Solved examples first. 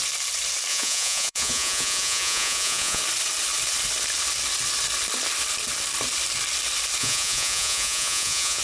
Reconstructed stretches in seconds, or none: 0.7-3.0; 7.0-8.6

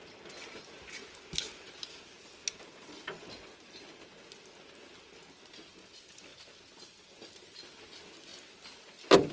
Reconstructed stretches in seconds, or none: none

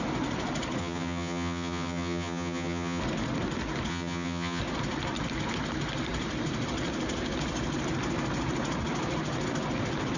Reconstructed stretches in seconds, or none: 0.8-3.0; 3.9-4.6

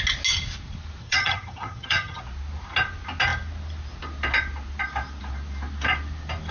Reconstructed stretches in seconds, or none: 1.0-2.2

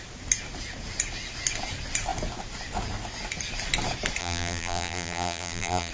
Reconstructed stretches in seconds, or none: 4.2-5.9

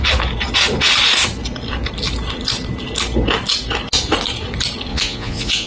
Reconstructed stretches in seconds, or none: 4.9-5.7

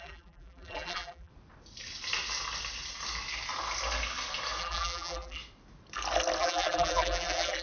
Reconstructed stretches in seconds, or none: 0.0-1.3; 4.6-5.4; 6.4-7.6

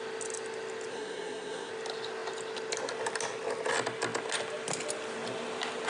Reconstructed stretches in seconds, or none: 0.9-1.7